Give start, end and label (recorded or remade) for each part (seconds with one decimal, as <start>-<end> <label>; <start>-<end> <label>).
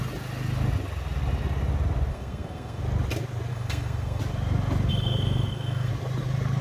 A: 0.0-2.1 recorded; 2.1-2.8 remade; 2.8-3.5 recorded; 3.5-4.2 remade; 4.2-4.9 recorded; 4.9-5.9 remade; 5.9-6.6 recorded